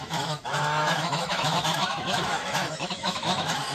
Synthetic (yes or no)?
yes